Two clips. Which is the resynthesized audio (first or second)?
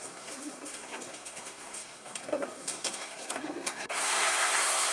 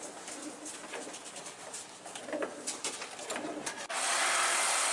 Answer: first